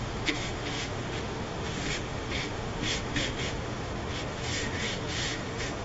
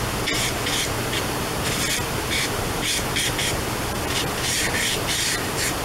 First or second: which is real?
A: second